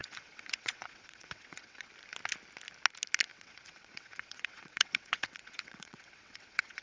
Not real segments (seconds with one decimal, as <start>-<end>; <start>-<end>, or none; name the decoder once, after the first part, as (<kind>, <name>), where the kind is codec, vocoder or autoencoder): 0.0-1.9 (vocoder, WaveNeXt); 3.3-6.8